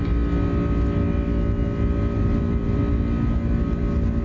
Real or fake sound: real